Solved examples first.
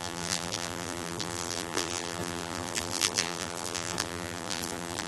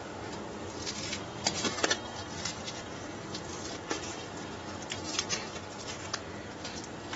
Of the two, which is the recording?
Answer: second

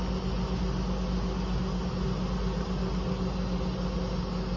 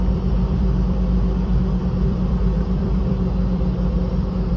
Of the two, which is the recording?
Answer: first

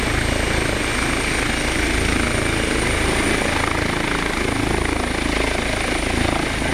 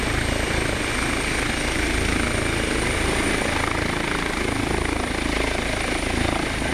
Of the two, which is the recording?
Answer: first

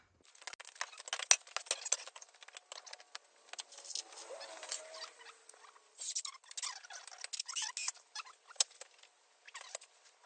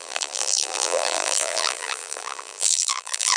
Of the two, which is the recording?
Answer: first